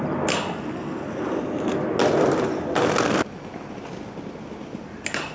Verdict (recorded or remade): recorded